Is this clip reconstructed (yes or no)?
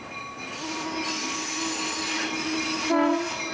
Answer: no